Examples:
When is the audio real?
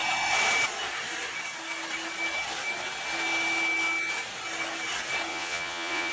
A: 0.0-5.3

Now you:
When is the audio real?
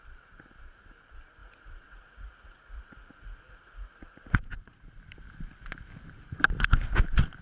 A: 0.0-1.4; 5.0-7.4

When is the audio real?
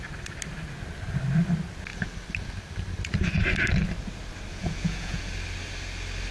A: 0.0-4.5; 5.2-6.3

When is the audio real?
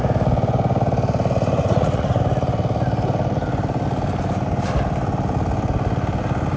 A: 0.0-1.6; 2.2-6.6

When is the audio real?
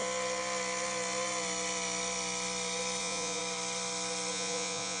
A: 0.0-3.0; 3.4-4.3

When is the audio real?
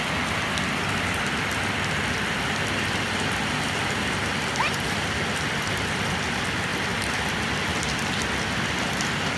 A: 0.0-9.4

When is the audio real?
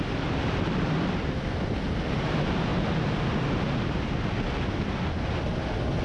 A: 0.0-6.0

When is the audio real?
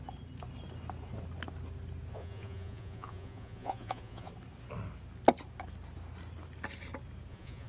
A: 0.0-2.1; 4.3-7.3